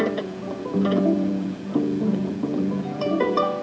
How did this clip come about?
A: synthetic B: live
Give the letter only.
A